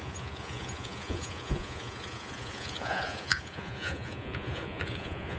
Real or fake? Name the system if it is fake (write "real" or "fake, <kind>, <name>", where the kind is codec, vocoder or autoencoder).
fake, vocoder, Vocos